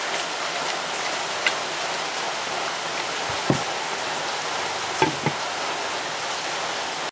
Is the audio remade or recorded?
recorded